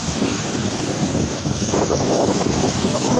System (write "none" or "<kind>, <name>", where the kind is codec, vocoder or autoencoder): codec, DAC